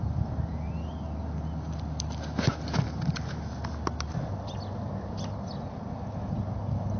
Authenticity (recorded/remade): recorded